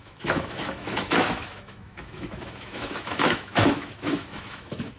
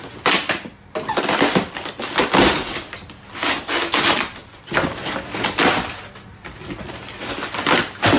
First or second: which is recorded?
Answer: second